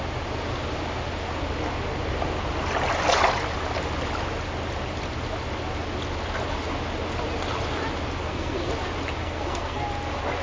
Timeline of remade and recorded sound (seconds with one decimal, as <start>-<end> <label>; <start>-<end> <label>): 0.0-8.2 recorded; 8.2-8.7 remade; 8.7-9.2 recorded; 9.2-9.8 remade; 9.8-10.4 recorded